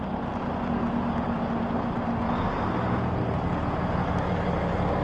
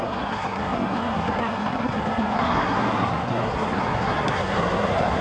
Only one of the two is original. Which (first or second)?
first